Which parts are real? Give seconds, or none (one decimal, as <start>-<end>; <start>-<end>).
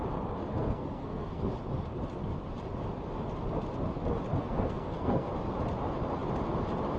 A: 0.0-0.5; 1.5-4.4; 5.3-7.0